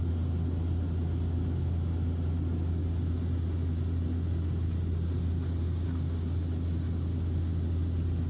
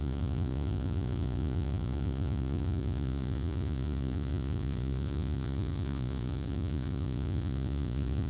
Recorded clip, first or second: first